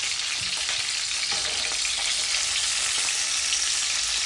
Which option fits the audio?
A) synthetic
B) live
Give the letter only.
B